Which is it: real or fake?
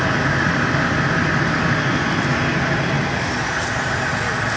real